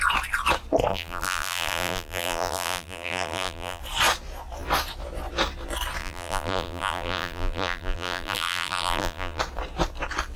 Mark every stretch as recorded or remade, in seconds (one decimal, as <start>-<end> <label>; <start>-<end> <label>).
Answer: 0.0-0.9 recorded; 0.9-3.8 remade; 3.8-6.0 recorded; 6.0-9.4 remade; 9.4-10.4 recorded

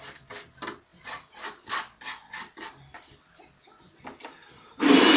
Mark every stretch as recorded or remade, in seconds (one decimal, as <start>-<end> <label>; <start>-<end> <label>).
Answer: 0.0-0.9 recorded; 0.9-4.0 remade; 4.0-5.2 recorded

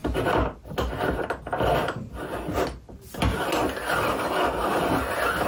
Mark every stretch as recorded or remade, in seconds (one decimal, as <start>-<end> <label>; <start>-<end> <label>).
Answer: 0.0-5.5 recorded

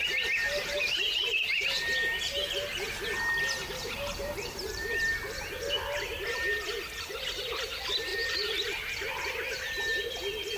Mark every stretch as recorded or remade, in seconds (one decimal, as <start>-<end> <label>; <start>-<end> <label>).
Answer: 0.0-3.8 recorded; 3.8-5.1 remade; 5.1-8.1 recorded; 8.1-9.1 remade; 9.1-10.6 recorded

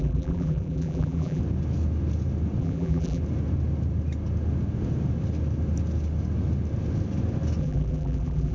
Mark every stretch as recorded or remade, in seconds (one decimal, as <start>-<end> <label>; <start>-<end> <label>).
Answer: 0.0-1.4 remade; 1.4-2.6 recorded; 2.6-3.2 remade; 3.2-7.6 recorded; 7.6-8.5 remade

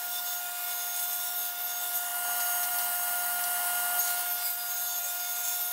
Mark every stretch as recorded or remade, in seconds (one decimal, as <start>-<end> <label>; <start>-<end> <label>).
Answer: 0.0-5.7 recorded

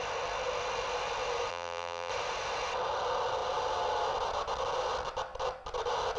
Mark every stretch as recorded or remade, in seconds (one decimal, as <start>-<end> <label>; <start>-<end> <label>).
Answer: 0.0-1.5 recorded; 1.5-2.1 remade; 2.1-6.2 recorded